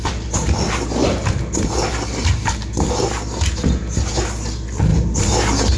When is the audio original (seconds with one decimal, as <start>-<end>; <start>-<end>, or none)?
0.0-5.8